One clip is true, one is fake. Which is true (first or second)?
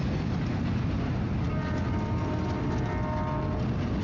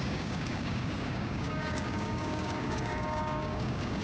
first